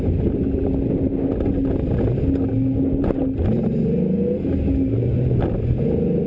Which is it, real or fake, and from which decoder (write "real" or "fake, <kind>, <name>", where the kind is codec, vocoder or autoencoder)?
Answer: real